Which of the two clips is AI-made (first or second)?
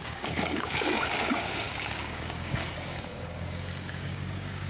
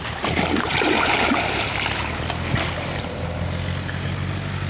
first